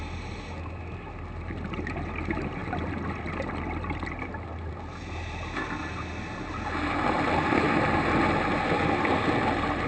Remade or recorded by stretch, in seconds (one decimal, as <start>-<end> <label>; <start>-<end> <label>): 0.0-9.9 recorded